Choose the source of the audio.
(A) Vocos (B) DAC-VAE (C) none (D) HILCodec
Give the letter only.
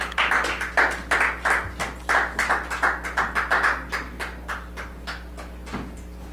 C